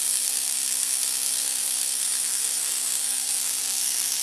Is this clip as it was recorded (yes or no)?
no